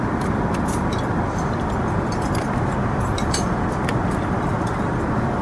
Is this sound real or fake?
fake